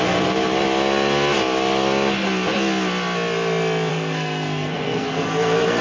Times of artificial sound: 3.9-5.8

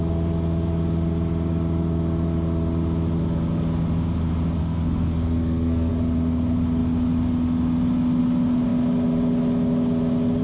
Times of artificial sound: 4.6-5.9

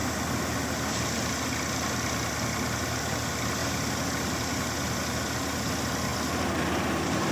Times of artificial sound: none

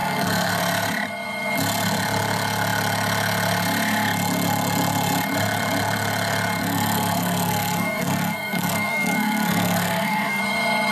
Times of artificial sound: 0.0-0.6; 6.6-10.4

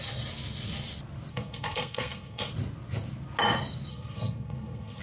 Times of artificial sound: 1.3-2.5; 3.9-5.0

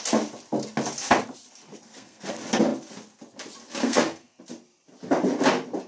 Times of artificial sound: 1.7-2.3; 3.8-4.4

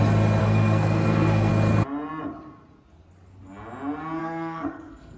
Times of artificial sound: 0.4-1.5; 4.2-5.2